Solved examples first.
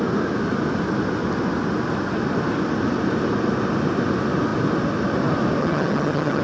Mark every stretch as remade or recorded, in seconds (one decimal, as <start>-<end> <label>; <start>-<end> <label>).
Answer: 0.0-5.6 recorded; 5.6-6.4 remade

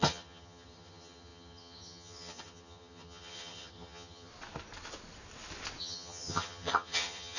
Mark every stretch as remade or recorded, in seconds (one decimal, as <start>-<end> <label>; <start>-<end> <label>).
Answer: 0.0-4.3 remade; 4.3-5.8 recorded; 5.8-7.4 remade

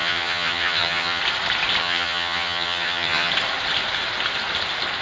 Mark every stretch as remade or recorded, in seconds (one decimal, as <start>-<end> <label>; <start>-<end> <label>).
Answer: 0.0-1.2 remade; 1.2-1.8 recorded; 1.8-3.3 remade; 3.3-5.0 recorded

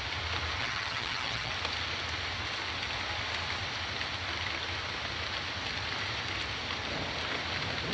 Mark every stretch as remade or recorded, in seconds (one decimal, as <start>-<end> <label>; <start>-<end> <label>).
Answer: 0.0-0.6 recorded; 0.6-1.5 remade; 1.5-7.9 recorded

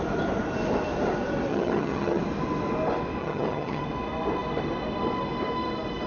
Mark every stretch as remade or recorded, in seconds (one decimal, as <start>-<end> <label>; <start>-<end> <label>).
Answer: 0.0-1.5 recorded; 1.5-2.2 remade; 2.2-3.2 recorded; 3.2-3.8 remade; 3.8-6.1 recorded

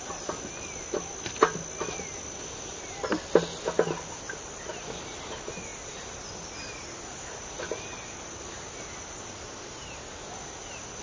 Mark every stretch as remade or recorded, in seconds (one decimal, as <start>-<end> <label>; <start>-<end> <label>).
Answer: 0.0-11.0 recorded